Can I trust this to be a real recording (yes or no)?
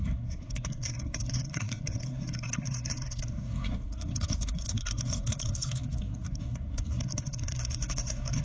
no